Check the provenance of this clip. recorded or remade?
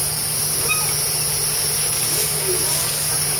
recorded